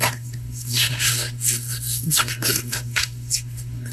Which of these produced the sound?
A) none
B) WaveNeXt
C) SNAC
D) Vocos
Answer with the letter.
C